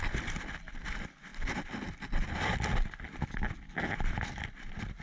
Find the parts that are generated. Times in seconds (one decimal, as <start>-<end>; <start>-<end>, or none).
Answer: 0.0-1.3; 4.3-5.0

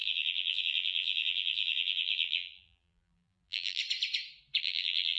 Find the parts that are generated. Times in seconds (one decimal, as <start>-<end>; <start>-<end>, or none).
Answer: 0.0-3.8; 4.6-5.2

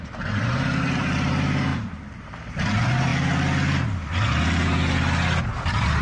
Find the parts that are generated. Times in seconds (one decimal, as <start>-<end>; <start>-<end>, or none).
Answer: 0.0-3.1; 5.4-6.0

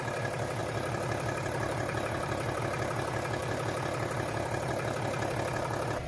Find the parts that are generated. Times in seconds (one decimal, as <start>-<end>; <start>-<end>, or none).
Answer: 0.6-2.6; 3.4-4.7

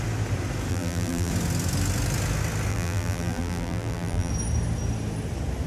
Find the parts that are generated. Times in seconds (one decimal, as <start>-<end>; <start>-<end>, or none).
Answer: 0.7-1.3; 2.7-4.3